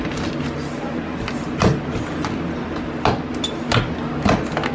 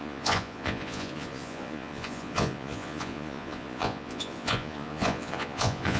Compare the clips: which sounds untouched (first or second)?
first